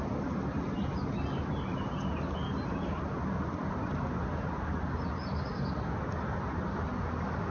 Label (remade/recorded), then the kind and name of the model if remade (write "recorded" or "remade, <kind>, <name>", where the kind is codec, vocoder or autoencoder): recorded